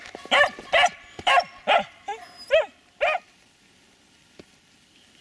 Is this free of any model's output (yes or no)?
yes